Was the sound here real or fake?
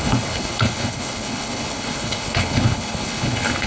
fake